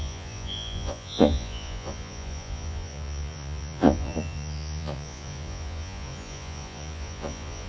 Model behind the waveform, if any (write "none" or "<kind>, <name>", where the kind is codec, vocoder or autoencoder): vocoder, Vocos